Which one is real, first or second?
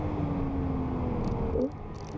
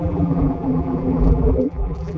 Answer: first